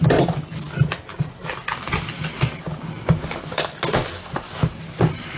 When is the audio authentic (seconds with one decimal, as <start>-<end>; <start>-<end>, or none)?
0.0-5.4